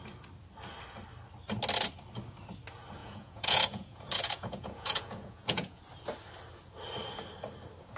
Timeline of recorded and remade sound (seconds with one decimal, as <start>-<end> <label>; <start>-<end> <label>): 0.0-3.0 recorded; 3.0-5.8 remade; 5.8-8.0 recorded